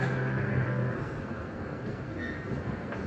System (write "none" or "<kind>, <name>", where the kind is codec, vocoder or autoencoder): codec, SNAC